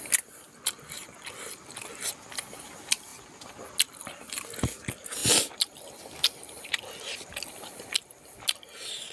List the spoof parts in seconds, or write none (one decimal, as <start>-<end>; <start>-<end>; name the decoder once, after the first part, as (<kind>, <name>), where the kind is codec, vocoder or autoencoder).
none